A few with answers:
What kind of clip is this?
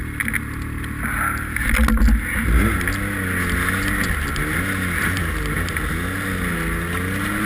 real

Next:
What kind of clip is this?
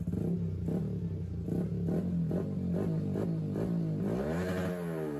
real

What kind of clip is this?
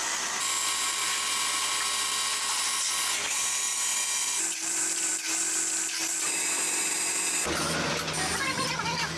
fake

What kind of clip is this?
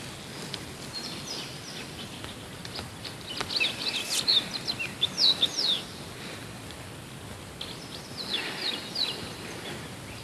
real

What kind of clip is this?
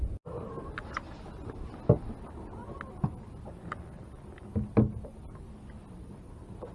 real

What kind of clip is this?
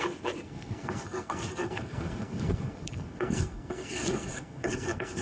fake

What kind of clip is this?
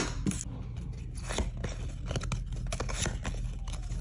real